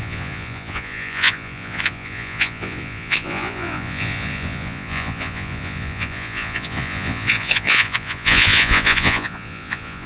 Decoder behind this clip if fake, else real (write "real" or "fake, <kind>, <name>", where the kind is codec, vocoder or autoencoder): fake, vocoder, Vocos